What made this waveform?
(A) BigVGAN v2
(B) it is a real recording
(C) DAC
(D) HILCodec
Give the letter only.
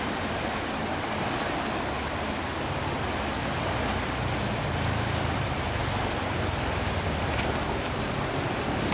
B